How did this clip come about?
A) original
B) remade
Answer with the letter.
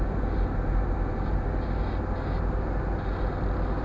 A